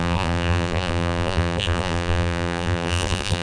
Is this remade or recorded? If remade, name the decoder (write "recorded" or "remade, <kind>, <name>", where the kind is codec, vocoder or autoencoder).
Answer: remade, vocoder, BigVGAN v2